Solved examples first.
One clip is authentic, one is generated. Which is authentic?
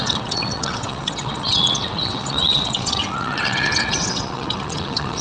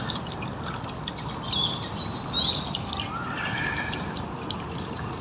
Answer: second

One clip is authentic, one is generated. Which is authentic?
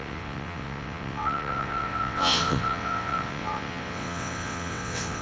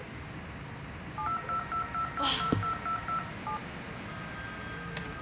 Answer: second